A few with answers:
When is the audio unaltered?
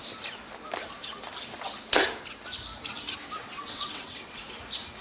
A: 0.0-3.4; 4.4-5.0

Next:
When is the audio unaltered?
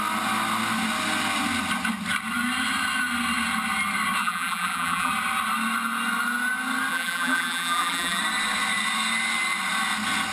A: 0.0-4.2; 5.1-6.9; 8.2-10.3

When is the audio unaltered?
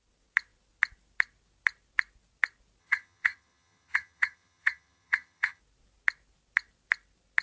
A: 0.0-2.8; 5.6-7.4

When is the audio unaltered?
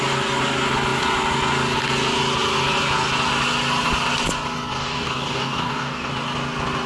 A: 0.0-4.8; 6.1-6.9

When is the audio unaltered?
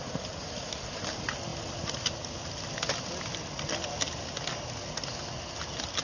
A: 0.0-6.0